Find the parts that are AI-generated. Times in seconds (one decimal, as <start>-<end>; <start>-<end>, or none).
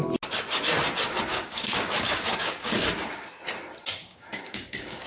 1.3-2.7; 4.0-5.1